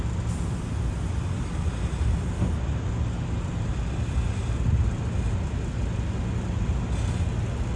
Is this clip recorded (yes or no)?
yes